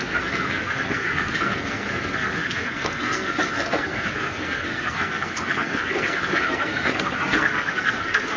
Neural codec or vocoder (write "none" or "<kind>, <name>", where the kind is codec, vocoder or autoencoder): codec, SNAC